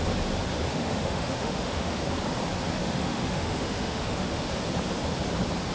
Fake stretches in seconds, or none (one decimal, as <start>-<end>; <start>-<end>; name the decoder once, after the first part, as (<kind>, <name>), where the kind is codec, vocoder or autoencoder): 0.7-2.0 (autoencoder, DAC-VAE); 2.8-4.5